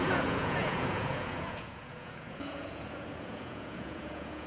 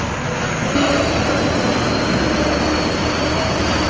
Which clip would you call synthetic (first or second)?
first